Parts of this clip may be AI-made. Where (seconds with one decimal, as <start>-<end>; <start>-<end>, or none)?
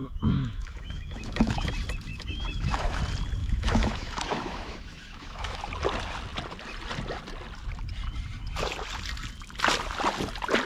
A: 0.0-1.7; 2.1-3.0; 3.4-5.6